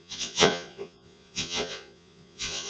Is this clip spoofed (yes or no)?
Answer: yes